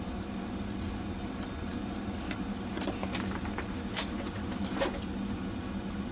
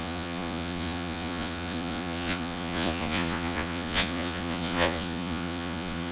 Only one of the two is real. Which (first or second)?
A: first